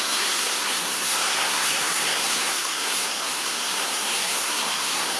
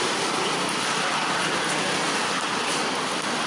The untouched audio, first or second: second